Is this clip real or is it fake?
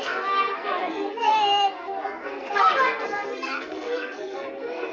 fake